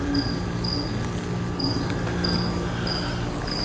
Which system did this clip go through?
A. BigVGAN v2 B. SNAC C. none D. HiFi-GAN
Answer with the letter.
C